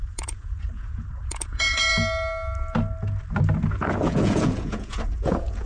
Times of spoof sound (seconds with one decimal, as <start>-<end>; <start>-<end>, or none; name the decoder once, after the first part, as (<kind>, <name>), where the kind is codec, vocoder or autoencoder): 0.0-1.9 (vocoder, Vocos); 3.8-5.7